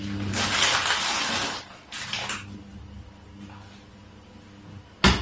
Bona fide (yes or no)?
yes